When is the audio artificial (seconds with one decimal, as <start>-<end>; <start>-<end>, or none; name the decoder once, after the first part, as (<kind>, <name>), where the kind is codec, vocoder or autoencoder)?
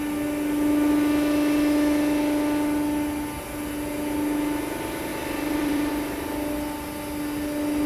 5.1-5.9 (vocoder, BigVGAN v2)